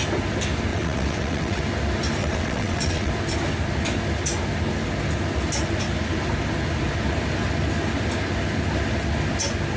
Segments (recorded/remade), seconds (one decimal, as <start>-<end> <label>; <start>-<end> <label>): 0.0-0.7 recorded; 0.7-1.6 remade; 1.6-2.2 recorded; 2.2-3.1 remade; 3.1-9.8 recorded